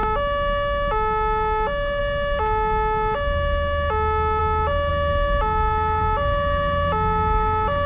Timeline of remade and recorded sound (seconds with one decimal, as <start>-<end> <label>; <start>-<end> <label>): 0.0-7.9 recorded

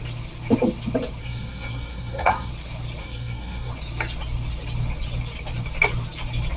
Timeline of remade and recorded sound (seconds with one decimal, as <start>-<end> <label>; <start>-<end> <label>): 0.0-1.2 recorded; 1.2-2.5 remade; 2.5-3.0 recorded; 3.0-3.7 remade; 3.7-6.6 recorded

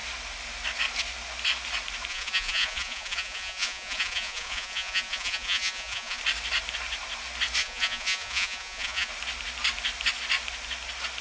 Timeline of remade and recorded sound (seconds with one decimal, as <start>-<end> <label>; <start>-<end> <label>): 0.0-2.1 recorded; 2.1-6.2 remade; 6.2-7.6 recorded; 7.6-9.1 remade; 9.1-11.2 recorded

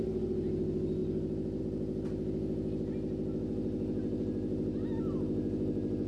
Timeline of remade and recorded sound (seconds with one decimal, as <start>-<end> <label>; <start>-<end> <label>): 0.0-6.1 recorded

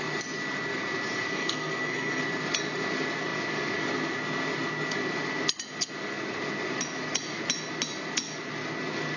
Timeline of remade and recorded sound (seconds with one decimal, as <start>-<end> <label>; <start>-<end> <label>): 0.0-1.3 recorded; 1.3-2.2 remade; 2.2-9.2 recorded

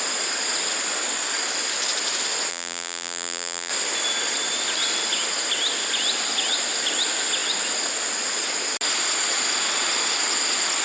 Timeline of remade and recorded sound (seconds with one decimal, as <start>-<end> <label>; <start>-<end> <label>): 0.0-2.5 recorded; 2.5-3.7 remade; 3.7-10.8 recorded

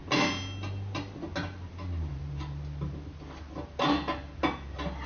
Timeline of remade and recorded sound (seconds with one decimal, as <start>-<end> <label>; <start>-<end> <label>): 0.0-5.1 recorded

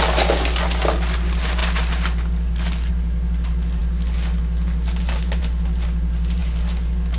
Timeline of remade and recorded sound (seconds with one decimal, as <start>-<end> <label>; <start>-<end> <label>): 0.0-7.2 recorded